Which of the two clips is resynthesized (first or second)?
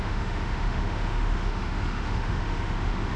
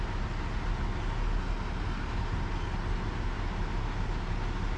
first